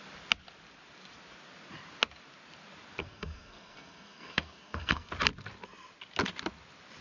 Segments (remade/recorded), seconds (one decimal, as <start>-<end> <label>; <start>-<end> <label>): 0.0-3.0 recorded; 3.0-5.1 remade; 5.1-7.0 recorded